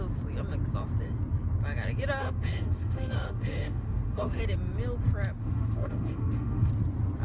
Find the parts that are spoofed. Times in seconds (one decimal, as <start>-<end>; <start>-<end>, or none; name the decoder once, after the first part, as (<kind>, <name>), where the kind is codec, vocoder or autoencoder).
2.2-4.4 (autoencoder, DAC-VAE); 5.4-6.7